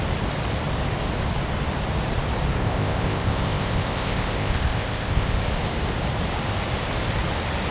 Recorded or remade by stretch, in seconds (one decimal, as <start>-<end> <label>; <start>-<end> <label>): 0.0-2.6 recorded; 2.6-5.4 remade; 5.4-7.7 recorded